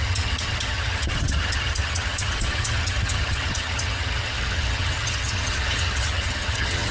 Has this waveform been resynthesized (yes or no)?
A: yes